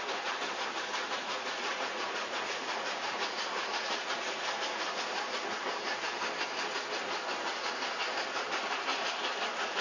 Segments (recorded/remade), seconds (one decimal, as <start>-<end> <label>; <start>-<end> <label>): 0.0-1.0 recorded; 1.0-5.6 remade; 5.6-9.8 recorded